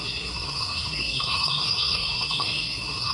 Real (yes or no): no